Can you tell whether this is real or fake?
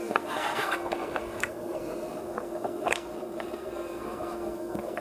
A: fake